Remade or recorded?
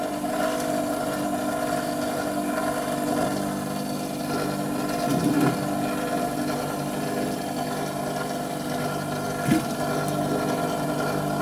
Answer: recorded